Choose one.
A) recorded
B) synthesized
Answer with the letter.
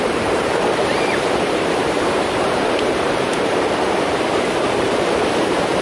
B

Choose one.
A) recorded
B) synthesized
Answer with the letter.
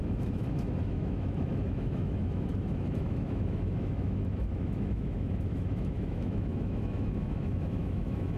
B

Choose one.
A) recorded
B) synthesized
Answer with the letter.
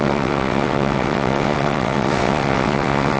B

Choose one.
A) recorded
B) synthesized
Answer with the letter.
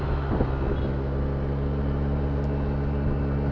A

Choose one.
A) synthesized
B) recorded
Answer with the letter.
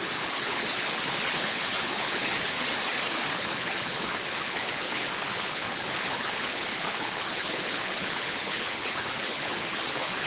A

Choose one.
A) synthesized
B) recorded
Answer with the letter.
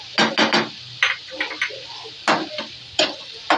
B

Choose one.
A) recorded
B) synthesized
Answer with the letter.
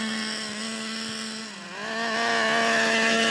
A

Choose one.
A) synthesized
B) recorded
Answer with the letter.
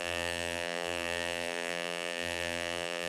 A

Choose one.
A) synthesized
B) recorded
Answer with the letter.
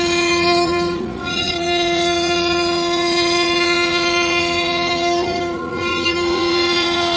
A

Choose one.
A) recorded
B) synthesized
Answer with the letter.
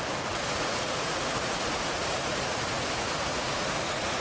B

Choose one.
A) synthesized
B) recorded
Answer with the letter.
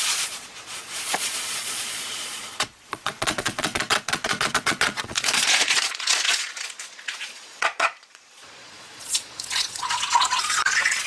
A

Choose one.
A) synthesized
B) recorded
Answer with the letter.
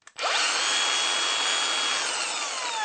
B